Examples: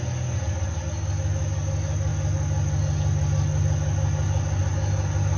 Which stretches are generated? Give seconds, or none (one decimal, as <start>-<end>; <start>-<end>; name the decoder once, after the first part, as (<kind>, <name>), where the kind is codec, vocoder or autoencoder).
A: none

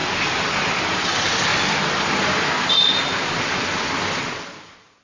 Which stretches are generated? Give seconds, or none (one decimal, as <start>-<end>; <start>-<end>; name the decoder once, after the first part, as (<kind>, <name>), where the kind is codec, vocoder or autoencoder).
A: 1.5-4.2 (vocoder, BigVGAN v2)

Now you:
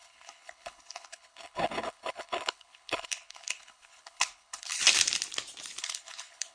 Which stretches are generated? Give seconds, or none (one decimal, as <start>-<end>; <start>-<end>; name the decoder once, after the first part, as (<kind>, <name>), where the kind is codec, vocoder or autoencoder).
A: 0.0-4.8 (codec, HILCodec); 5.8-6.5

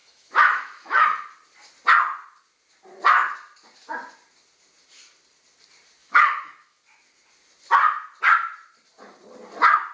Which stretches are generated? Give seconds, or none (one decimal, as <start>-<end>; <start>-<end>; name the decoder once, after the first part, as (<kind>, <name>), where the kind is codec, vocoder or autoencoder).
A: 0.0-1.0 (autoencoder, DAC-VAE); 6.0-6.8